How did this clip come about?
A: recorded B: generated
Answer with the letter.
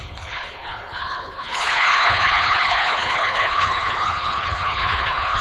B